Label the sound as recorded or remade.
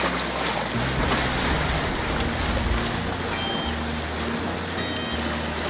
recorded